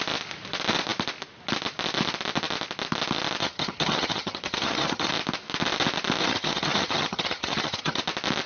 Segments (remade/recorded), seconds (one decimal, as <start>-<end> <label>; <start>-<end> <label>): 0.0-3.4 recorded; 3.4-5.1 remade; 5.1-6.2 recorded; 6.2-8.0 remade; 8.0-8.5 recorded